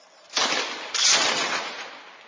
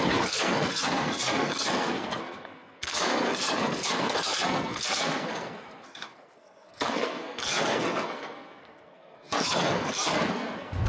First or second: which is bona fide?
first